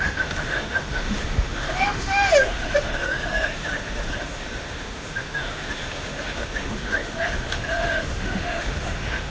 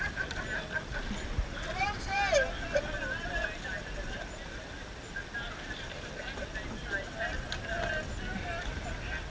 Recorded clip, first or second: second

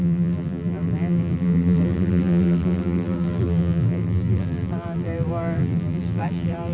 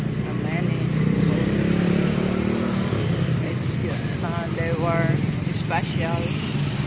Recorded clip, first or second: second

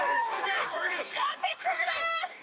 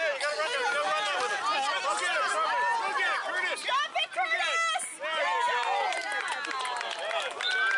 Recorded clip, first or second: second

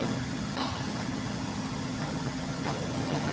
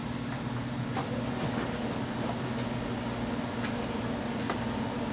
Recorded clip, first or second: second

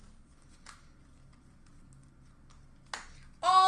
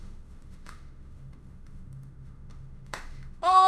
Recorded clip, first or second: first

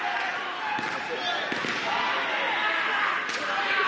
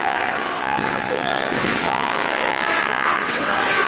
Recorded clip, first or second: first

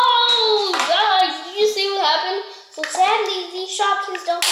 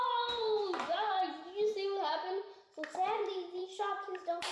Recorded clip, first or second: first